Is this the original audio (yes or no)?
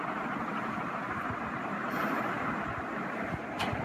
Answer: yes